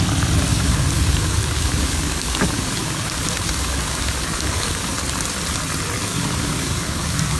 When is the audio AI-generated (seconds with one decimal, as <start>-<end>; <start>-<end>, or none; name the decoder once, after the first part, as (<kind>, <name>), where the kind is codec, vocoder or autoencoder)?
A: 0.5-4.9 (codec, DAC); 6.1-7.4